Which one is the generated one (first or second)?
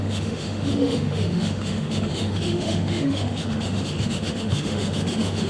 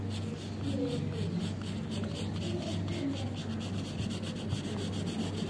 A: first